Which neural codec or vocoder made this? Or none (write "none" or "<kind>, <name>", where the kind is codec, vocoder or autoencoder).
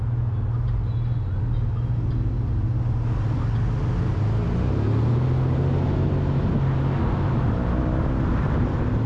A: none